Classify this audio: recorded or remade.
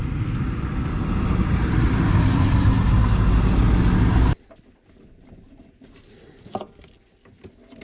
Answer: recorded